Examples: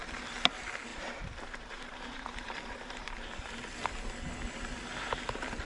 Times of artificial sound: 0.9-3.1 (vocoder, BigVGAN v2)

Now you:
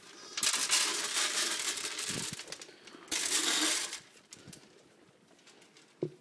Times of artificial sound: 0.9-4.6 (vocoder, BigVGAN v2)

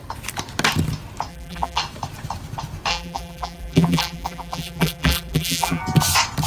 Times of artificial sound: 1.3-1.8 (vocoder, BigVGAN v2); 2.9-5.8

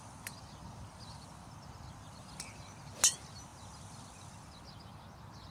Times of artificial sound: none

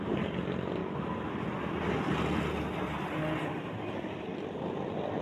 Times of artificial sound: 0.0-0.8 (vocoder, BigVGAN v2); 3.9-4.3

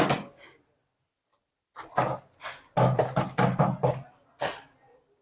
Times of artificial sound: none

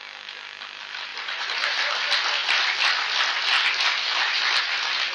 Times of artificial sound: 1.1-1.9 (vocoder, BigVGAN v2)